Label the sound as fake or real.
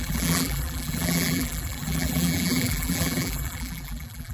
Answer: fake